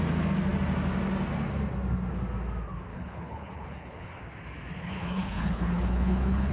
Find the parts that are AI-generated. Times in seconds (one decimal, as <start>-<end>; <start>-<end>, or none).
2.9-4.2; 4.8-6.5